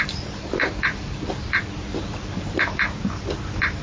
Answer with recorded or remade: remade